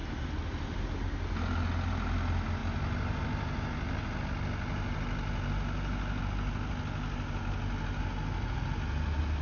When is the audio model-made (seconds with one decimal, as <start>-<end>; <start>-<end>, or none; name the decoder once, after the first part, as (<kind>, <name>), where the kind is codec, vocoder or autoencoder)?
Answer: none